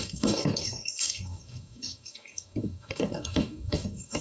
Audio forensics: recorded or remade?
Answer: remade